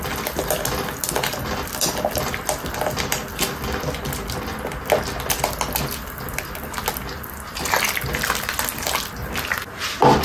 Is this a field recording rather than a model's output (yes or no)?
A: yes